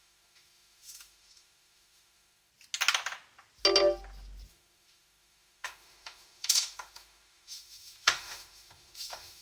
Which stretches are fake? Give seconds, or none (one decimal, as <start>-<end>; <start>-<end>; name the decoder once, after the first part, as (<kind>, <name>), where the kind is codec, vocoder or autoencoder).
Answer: 0.0-2.5 (autoencoder, DAC-VAE); 4.5-9.4